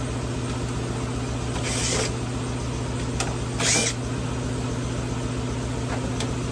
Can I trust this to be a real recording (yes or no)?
yes